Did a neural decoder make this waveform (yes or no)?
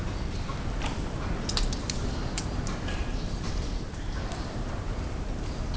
no